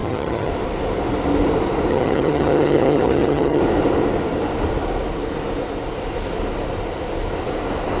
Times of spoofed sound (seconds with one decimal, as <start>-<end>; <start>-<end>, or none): 0.0-0.5; 1.9-3.6